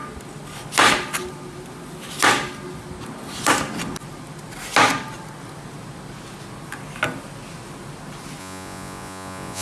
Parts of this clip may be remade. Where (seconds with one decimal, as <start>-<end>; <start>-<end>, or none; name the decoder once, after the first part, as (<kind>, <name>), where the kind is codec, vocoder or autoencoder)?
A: 8.4-9.6 (vocoder, Vocos)